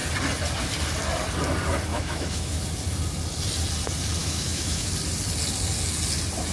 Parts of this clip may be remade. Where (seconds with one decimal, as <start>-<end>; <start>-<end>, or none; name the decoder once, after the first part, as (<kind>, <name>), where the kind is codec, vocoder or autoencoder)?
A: 1.9-2.6 (autoencoder, DAC-VAE); 4.2-4.9